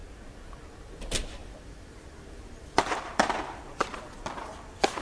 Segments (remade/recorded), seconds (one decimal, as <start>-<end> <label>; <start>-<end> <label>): 0.0-0.9 recorded; 0.9-5.0 remade